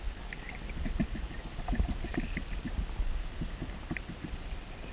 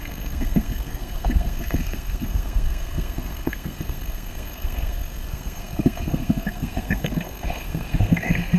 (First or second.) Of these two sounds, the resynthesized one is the second